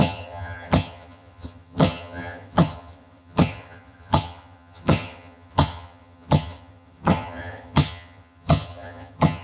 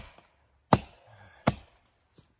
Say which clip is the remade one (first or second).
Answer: first